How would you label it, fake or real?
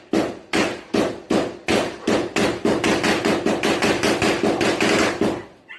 real